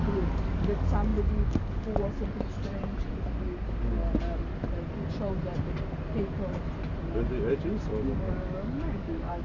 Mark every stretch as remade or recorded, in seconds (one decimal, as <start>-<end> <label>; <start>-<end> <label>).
0.0-2.7 remade; 2.7-7.9 recorded; 7.9-9.4 remade